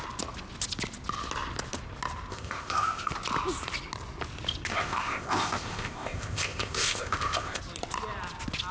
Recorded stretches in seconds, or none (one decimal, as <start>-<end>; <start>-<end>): 0.0-2.3; 3.1-4.7; 7.6-8.7